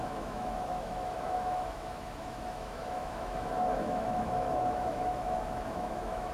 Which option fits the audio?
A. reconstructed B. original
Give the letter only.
A